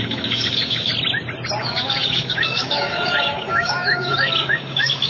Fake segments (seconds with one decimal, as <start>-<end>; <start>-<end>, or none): 0.0-0.9; 1.6-5.1